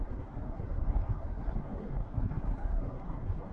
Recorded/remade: remade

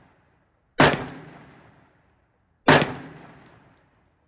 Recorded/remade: recorded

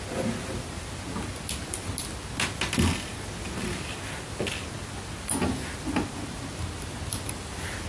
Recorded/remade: recorded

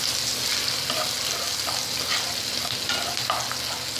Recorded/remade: recorded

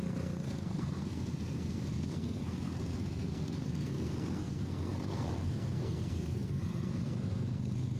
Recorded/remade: remade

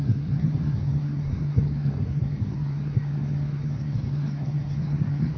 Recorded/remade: remade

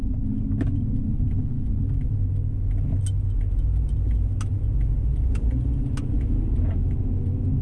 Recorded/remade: recorded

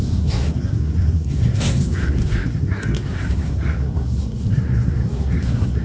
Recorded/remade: remade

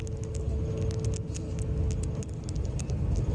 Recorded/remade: recorded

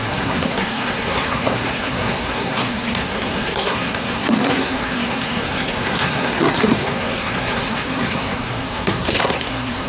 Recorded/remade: remade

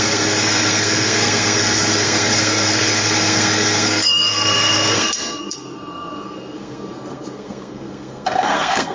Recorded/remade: remade